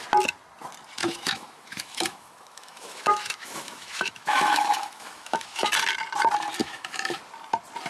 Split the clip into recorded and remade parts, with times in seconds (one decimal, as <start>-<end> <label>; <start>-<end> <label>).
0.0-1.0 recorded; 1.0-5.7 remade; 5.7-6.6 recorded; 6.6-7.2 remade; 7.2-7.9 recorded

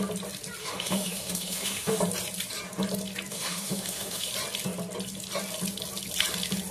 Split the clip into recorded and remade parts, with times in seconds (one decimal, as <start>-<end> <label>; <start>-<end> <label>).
0.0-0.6 recorded; 0.6-2.0 remade; 2.0-3.3 recorded; 3.3-4.3 remade; 4.3-6.7 recorded

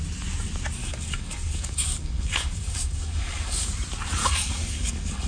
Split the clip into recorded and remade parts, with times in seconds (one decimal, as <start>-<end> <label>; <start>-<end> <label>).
0.0-0.8 recorded; 0.8-3.7 remade; 3.7-4.2 recorded; 4.2-5.3 remade

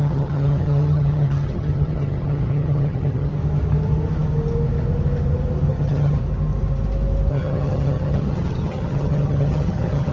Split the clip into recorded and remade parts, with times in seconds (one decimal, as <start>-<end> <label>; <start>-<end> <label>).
0.0-3.3 remade; 3.3-5.7 recorded; 5.7-6.2 remade; 6.2-7.3 recorded; 7.3-10.1 remade

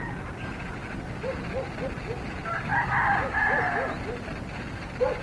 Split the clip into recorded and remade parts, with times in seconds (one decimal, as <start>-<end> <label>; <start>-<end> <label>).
0.0-2.7 recorded; 2.7-3.6 remade; 3.6-5.2 recorded

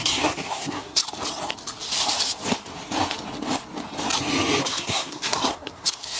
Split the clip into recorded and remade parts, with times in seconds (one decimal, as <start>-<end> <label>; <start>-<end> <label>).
0.0-1.0 remade; 1.0-4.6 recorded; 4.6-6.2 remade

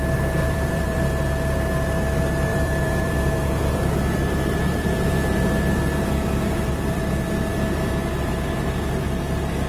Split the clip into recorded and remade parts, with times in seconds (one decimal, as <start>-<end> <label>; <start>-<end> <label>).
0.0-0.4 recorded; 0.4-1.0 remade; 1.0-2.5 recorded; 2.5-7.0 remade; 7.0-7.5 recorded; 7.5-8.5 remade; 8.5-9.7 recorded

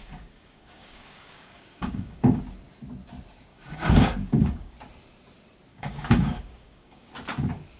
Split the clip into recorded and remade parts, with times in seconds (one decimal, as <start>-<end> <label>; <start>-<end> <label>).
0.0-2.4 remade; 2.4-3.5 recorded; 3.5-4.7 remade; 4.7-5.7 recorded; 5.7-7.1 remade; 7.1-7.8 recorded